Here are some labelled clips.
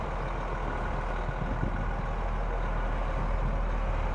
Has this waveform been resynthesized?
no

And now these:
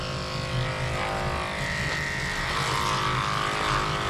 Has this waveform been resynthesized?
no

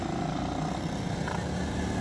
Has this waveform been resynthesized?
no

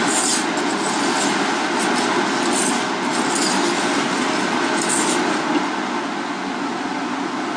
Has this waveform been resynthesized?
no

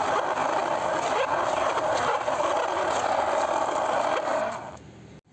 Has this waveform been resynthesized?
no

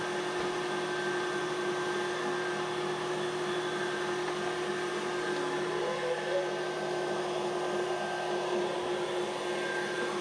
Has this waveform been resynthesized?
no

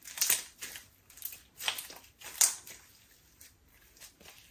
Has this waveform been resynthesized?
no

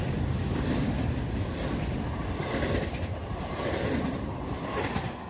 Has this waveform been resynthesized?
no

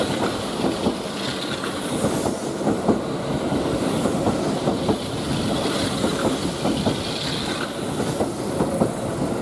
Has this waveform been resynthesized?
no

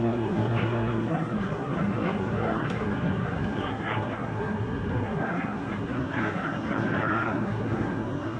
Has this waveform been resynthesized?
yes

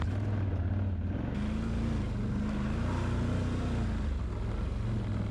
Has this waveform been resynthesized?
no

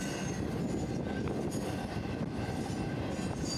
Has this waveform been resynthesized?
no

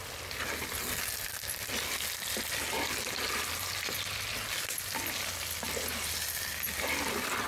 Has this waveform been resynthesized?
no